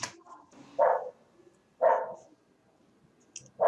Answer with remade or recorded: recorded